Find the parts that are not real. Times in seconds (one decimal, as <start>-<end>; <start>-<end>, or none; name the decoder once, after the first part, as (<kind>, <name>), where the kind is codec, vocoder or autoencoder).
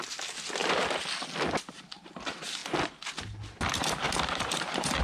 0.0-0.6 (vocoder, BigVGAN v2); 1.7-2.6; 4.2-5.0